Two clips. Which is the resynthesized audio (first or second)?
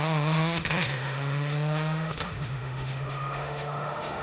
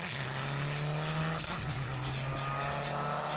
first